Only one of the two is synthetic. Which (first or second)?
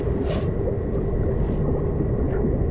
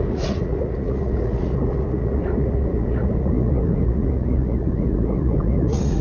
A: second